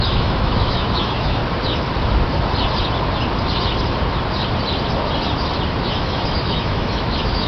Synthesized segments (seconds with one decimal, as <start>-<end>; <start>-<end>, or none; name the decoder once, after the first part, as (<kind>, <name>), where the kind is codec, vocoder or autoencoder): 0.0-1.4 (autoencoder, DAC-VAE); 5.8-7.5